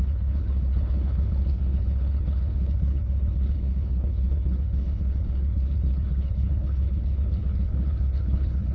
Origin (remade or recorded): remade